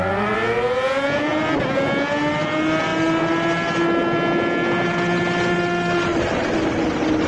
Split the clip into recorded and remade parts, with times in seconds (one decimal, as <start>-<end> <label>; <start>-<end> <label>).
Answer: 0.0-7.3 recorded